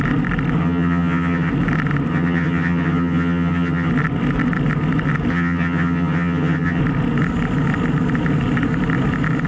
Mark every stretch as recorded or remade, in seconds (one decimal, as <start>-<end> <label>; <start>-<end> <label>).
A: 0.0-0.6 recorded; 0.6-1.5 remade; 1.5-2.1 recorded; 2.1-3.9 remade; 3.9-5.3 recorded; 5.3-6.8 remade; 6.8-9.5 recorded